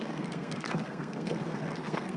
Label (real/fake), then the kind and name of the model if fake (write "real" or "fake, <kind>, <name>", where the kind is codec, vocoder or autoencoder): fake, codec, SNAC